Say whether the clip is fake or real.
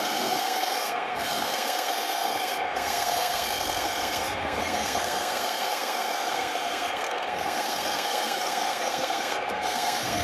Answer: fake